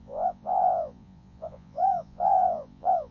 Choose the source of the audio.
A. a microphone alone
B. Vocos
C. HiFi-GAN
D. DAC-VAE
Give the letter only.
B